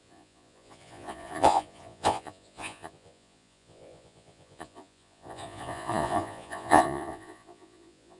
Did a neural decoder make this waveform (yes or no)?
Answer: yes